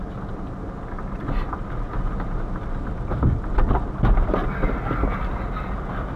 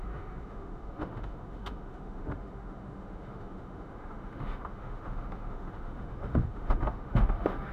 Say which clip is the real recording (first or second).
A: first